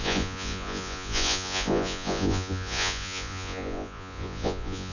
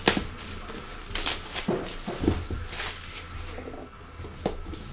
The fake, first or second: first